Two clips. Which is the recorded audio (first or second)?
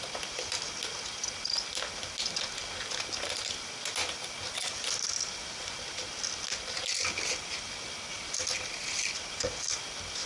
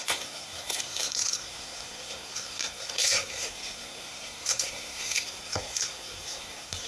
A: first